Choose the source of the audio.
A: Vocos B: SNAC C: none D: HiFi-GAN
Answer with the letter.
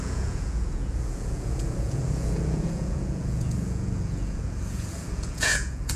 A